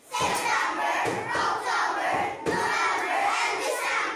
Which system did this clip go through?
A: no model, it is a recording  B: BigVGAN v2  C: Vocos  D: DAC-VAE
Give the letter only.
A